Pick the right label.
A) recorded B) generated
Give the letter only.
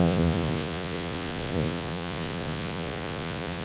B